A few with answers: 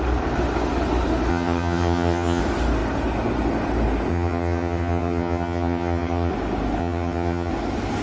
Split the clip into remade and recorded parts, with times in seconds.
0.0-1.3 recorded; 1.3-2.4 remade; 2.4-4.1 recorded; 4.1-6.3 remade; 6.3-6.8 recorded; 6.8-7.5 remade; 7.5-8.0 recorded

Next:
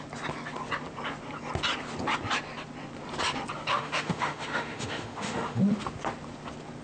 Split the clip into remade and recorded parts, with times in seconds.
0.0-3.7 recorded; 3.7-5.6 remade; 5.6-6.8 recorded

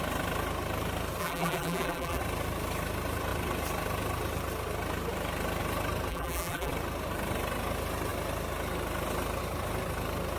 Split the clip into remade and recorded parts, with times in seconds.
0.0-1.2 recorded; 1.2-2.2 remade; 2.2-6.1 recorded; 6.1-6.7 remade; 6.7-10.4 recorded

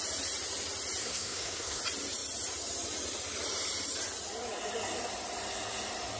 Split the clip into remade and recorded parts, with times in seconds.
0.0-1.0 recorded; 1.0-1.8 remade; 1.8-6.2 recorded

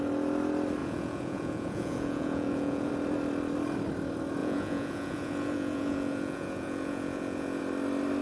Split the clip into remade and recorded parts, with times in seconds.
0.0-0.8 recorded; 0.8-2.9 remade; 2.9-4.4 recorded; 4.4-7.6 remade; 7.6-8.2 recorded

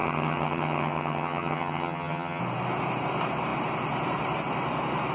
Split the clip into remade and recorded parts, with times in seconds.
0.0-2.4 remade; 2.4-5.1 recorded

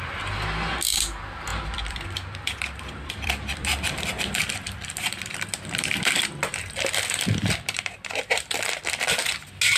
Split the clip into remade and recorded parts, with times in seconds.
0.0-1.5 recorded; 1.5-4.9 remade; 4.9-9.8 recorded